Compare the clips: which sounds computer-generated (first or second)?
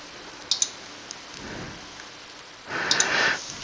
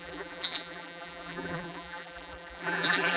second